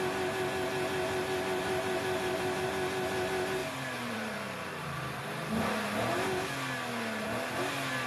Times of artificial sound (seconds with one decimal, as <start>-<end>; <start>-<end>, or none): 1.6-2.7; 3.6-5.2